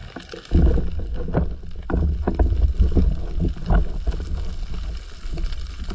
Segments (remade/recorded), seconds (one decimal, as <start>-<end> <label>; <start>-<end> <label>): 0.0-5.9 recorded